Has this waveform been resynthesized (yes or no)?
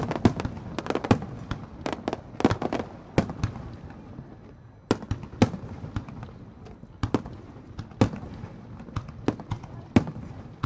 no